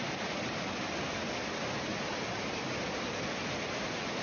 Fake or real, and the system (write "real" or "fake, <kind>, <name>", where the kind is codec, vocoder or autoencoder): real